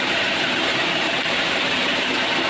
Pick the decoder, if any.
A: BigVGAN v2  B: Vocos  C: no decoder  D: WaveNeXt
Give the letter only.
A